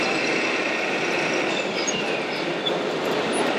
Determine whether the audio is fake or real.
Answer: real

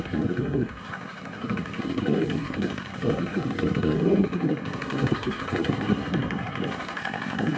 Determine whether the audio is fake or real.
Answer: fake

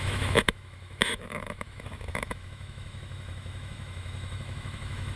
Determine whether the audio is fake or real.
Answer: fake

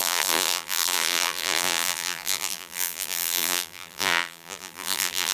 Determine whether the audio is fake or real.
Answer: fake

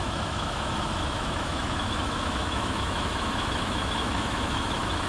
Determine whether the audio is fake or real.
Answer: fake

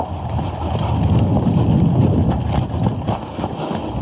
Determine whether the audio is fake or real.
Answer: real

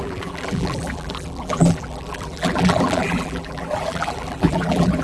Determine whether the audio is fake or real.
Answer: fake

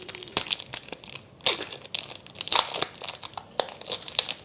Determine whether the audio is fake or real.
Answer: real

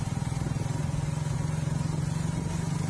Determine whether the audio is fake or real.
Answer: real